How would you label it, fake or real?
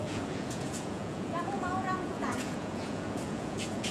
fake